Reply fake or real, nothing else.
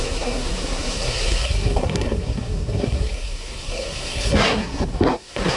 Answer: fake